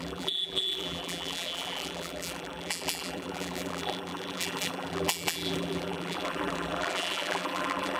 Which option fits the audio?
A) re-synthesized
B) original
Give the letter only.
A